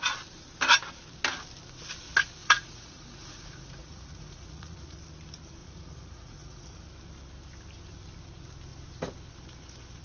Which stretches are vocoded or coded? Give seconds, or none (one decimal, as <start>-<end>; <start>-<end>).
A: 2.4-5.0; 5.6-6.8